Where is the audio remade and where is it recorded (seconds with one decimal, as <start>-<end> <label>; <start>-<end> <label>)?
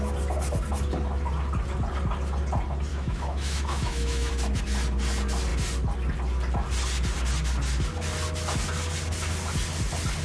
0.0-2.9 recorded; 2.9-4.3 remade; 4.3-10.2 recorded